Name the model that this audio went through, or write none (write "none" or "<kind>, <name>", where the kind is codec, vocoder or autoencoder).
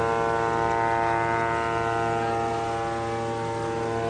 none